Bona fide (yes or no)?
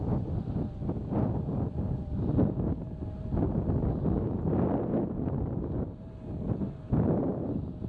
yes